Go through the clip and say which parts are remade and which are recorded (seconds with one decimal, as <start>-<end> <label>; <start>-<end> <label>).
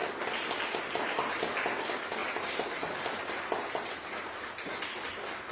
0.0-5.5 recorded